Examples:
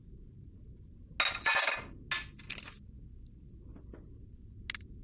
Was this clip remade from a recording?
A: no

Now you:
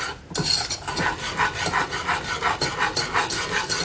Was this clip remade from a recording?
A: no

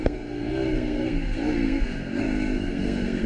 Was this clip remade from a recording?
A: yes